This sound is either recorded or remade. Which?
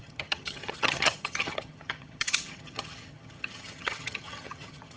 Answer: remade